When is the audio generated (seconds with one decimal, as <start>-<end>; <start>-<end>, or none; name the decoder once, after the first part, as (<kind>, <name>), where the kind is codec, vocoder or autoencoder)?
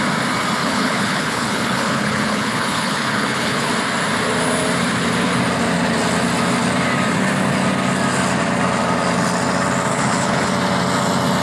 0.6-3.7 (codec, HILCodec); 9.9-10.5